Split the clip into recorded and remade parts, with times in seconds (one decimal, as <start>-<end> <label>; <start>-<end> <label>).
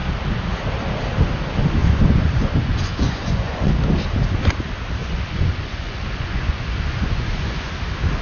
0.0-1.8 recorded; 1.8-3.7 remade; 3.7-5.0 recorded; 5.0-7.7 remade; 7.7-8.2 recorded